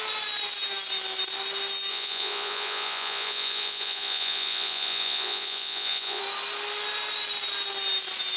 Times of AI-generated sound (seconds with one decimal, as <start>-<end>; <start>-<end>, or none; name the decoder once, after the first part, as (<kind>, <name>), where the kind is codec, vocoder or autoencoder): 1.9-6.2 (vocoder, Vocos)